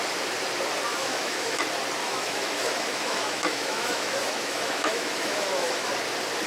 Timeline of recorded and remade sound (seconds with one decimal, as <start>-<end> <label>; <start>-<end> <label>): 0.0-0.9 recorded; 0.9-1.6 remade; 1.6-2.0 recorded; 2.0-5.9 remade; 5.9-6.5 recorded